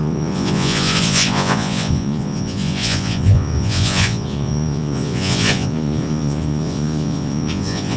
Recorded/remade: remade